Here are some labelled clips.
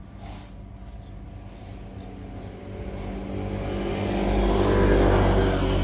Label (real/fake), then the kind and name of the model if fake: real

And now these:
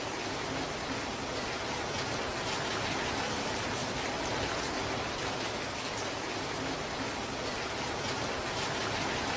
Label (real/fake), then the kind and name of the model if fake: real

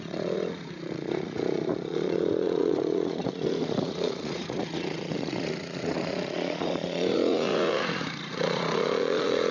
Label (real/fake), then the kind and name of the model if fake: fake, vocoder, Vocos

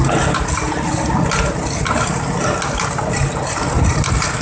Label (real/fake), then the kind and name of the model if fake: real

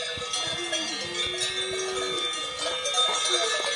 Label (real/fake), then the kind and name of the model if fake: real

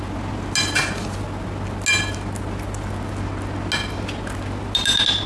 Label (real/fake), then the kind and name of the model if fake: real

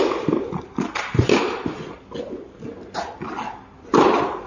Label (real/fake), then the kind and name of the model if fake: real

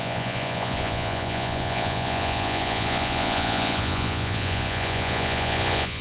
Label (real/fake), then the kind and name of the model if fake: fake, vocoder, Vocos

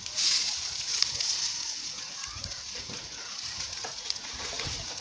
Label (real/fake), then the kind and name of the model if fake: fake, vocoder, Vocos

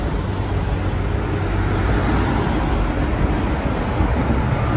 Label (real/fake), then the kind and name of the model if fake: real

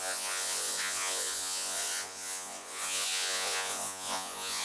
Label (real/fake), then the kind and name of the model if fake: fake, vocoder, Vocos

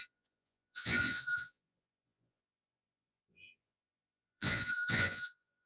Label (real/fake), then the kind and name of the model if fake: fake, vocoder, Vocos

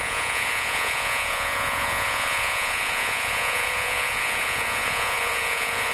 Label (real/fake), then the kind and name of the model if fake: fake, vocoder, Vocos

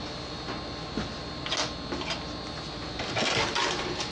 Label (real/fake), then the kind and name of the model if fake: real